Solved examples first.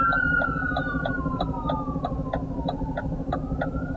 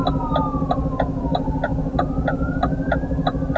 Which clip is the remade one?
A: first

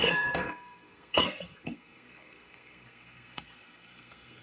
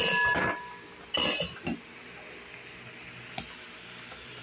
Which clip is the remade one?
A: first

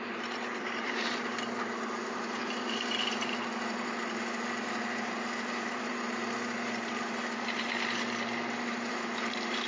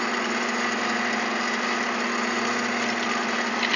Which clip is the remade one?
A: first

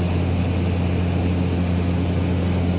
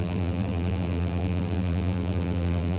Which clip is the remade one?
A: second